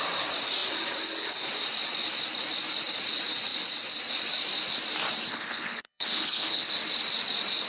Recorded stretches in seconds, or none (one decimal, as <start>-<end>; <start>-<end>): 0.0-5.3; 6.7-7.7

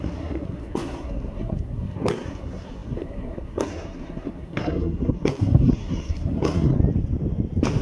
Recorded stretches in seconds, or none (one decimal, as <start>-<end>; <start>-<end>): 6.8-7.8

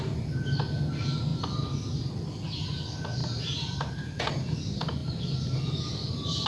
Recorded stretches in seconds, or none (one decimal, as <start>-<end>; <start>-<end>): 0.0-3.2; 4.3-5.0; 5.6-6.5

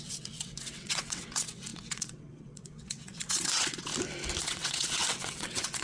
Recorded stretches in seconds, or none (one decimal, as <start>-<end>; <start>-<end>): 3.9-4.4

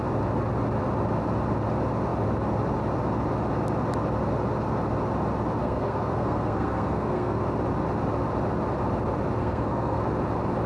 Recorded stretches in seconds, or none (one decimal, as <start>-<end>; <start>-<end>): 0.0-5.6; 7.4-9.4; 10.0-10.7

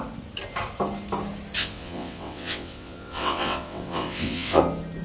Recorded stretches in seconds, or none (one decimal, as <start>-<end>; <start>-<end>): 0.0-1.6; 4.6-5.0

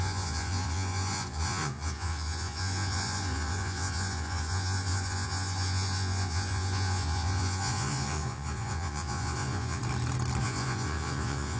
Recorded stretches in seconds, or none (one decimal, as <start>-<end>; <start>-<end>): 9.8-10.4